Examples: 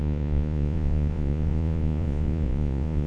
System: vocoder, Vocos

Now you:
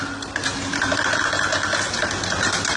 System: none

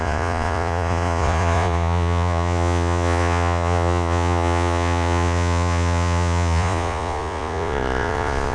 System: vocoder, Vocos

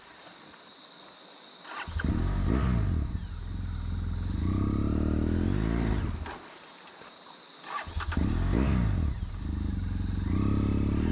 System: none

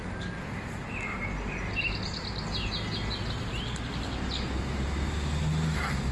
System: none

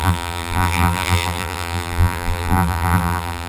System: vocoder, BigVGAN v2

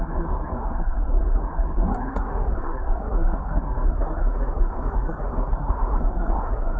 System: codec, SNAC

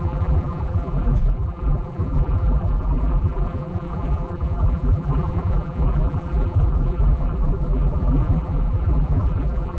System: vocoder, BigVGAN v2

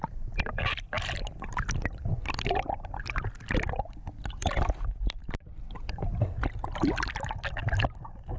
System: none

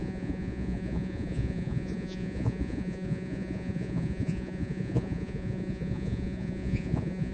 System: vocoder, Vocos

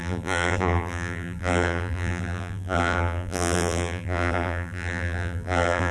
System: vocoder, BigVGAN v2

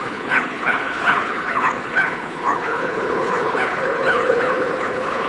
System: codec, HILCodec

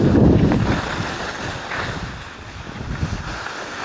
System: none